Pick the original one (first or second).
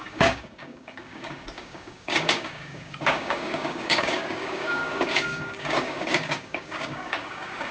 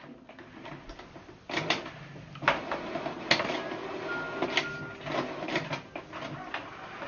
second